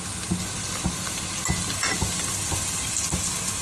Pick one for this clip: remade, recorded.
recorded